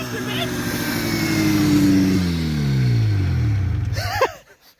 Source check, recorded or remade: recorded